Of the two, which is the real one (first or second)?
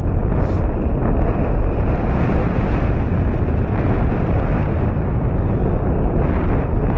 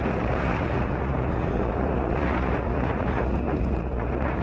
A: first